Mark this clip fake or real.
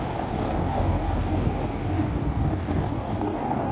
fake